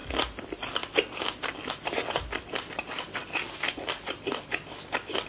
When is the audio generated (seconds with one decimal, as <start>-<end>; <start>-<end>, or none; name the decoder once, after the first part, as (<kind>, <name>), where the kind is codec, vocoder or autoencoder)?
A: none